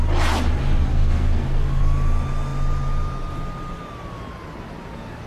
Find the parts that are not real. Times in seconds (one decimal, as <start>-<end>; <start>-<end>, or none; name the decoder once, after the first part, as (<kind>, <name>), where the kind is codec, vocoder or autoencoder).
0.9-1.8 (codec, SNAC)